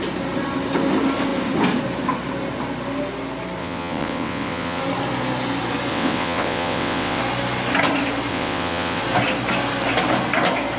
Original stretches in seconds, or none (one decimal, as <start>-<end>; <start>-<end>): 0.0-3.6; 4.8-5.9; 7.2-8.3; 9.0-10.8